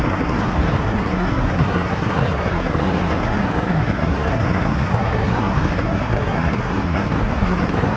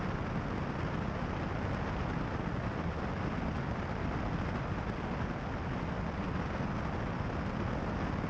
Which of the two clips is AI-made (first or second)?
first